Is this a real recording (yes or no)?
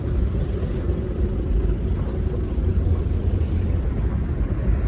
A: yes